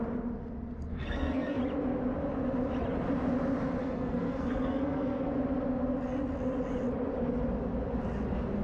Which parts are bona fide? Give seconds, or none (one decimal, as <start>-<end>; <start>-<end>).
0.0-0.9; 1.6-3.8; 5.3-8.6